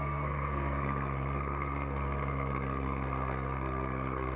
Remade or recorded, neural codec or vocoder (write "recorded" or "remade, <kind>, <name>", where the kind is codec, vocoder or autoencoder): remade, codec, SNAC